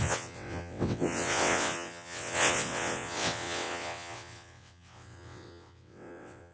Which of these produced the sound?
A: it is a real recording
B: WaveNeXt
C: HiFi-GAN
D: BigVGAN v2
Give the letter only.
B